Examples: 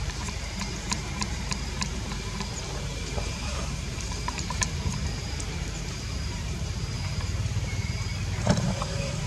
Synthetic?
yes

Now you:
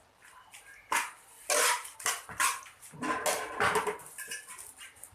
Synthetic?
no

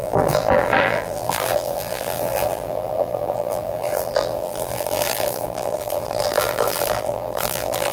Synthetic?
yes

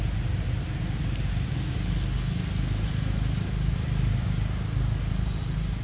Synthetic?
no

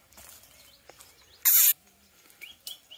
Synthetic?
no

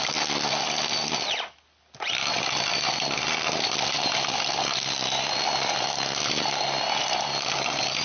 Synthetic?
no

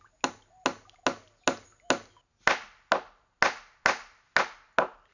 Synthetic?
no